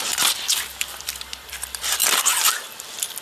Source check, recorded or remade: recorded